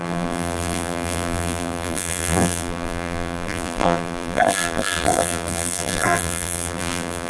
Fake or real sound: fake